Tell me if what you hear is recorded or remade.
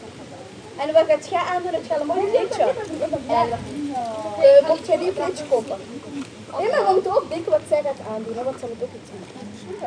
remade